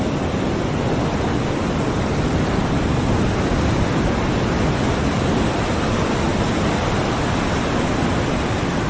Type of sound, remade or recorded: recorded